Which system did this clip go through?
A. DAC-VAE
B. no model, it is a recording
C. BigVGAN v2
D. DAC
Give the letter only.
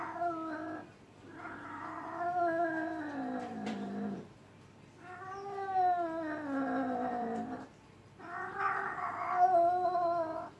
B